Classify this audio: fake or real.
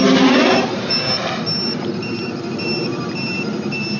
fake